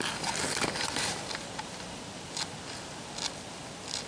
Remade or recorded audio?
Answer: recorded